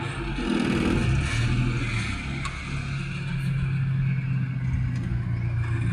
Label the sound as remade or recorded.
recorded